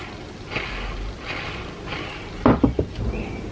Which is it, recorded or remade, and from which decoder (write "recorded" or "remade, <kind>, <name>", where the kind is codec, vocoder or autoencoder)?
recorded